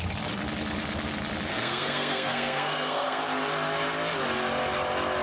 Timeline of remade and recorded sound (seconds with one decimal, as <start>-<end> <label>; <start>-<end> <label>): 0.0-1.5 recorded; 1.5-3.2 remade; 3.2-5.2 recorded